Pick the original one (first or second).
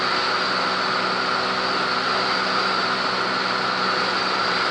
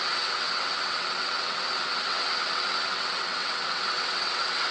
first